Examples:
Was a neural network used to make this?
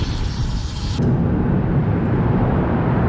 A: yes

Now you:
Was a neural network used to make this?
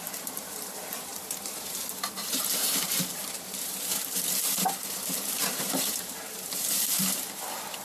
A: yes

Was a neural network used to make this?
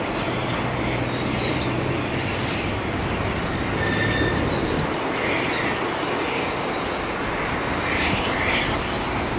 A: no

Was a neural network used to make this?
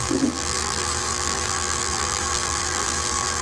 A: yes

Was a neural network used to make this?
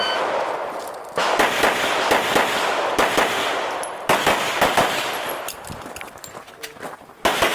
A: no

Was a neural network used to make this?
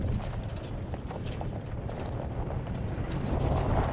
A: yes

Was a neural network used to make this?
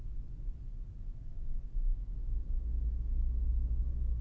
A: no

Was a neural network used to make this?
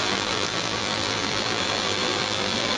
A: yes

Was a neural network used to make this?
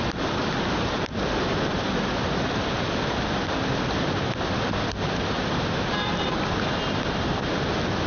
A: no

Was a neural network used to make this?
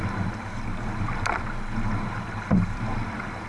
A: no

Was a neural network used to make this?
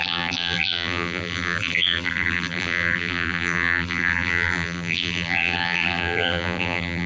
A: yes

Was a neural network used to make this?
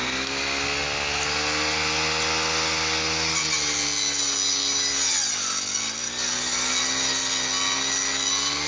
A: no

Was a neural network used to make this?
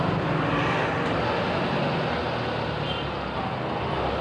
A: no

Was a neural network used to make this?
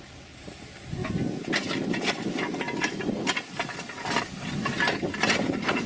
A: no